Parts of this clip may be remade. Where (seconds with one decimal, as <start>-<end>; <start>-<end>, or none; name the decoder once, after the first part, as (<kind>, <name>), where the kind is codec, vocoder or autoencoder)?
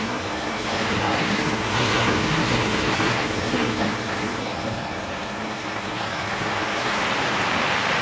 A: 0.0-7.0 (codec, SNAC)